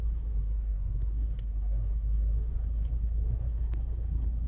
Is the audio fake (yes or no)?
yes